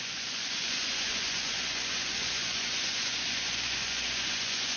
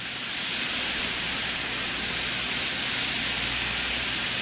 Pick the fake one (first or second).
first